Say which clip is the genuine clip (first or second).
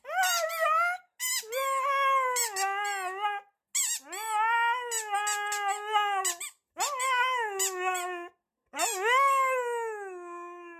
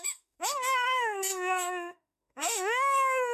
first